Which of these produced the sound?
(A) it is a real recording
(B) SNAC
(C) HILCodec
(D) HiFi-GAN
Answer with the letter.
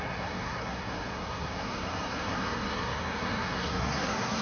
B